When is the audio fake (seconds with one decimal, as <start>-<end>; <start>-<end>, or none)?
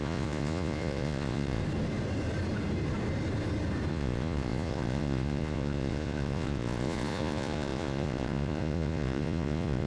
0.0-1.6; 3.9-9.9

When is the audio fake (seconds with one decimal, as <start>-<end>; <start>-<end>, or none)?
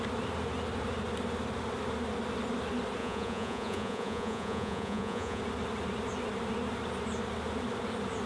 3.0-5.4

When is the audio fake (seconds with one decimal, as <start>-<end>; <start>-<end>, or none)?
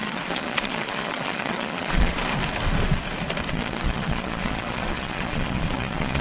0.0-2.2; 3.5-6.2